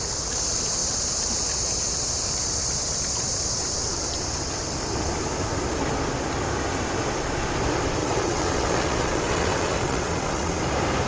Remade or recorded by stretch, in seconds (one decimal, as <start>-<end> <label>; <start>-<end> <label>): 0.0-8.0 recorded; 8.0-10.6 remade; 10.6-11.1 recorded